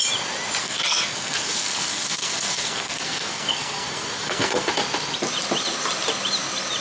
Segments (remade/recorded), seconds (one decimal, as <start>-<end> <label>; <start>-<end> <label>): 0.0-0.6 recorded; 0.6-4.7 remade; 4.7-6.8 recorded